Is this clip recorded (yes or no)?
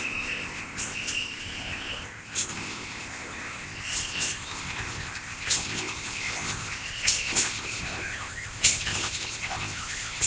no